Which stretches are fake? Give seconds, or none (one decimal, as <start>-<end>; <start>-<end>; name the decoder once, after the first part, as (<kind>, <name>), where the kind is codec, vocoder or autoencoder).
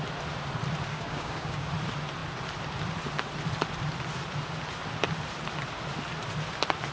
0.9-1.7 (codec, DAC)